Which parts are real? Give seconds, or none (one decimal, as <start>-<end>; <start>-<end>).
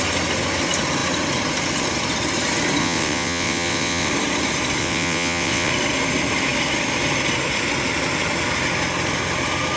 0.0-2.8; 4.1-4.8; 5.7-9.8